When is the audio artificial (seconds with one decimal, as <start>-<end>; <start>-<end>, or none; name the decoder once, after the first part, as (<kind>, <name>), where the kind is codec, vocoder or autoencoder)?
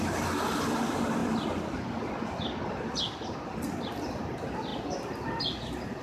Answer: none